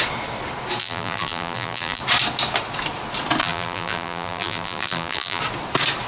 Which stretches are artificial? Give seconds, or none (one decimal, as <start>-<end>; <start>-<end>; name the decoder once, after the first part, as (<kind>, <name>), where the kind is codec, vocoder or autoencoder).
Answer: 0.8-2.0 (vocoder, BigVGAN v2); 3.4-5.4